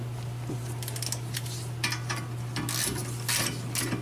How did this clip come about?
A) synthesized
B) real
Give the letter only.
B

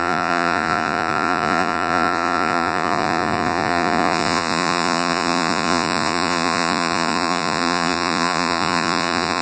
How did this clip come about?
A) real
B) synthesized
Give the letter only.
B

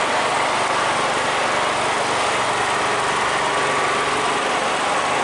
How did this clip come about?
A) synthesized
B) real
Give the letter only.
B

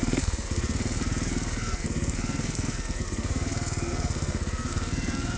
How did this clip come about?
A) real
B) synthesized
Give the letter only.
B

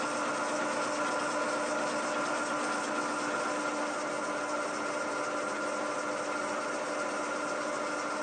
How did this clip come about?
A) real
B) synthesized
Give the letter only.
A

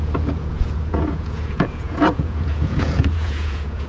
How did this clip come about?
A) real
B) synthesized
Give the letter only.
B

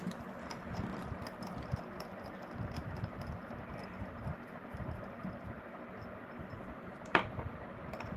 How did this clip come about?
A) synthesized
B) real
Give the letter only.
B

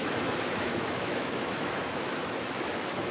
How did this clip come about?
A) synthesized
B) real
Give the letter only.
A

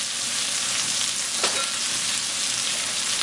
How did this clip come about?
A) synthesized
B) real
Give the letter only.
B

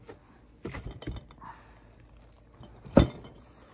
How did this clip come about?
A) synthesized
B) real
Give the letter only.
B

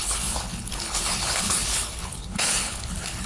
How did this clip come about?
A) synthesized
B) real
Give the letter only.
A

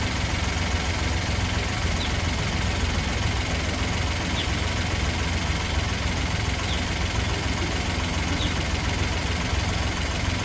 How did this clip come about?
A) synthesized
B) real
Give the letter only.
B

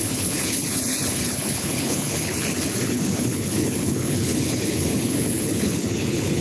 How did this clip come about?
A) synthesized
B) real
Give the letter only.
A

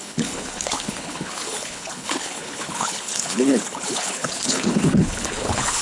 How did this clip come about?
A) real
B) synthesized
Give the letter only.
B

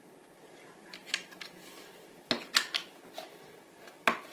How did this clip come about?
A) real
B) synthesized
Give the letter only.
A